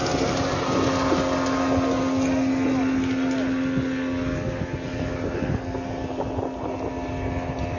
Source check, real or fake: real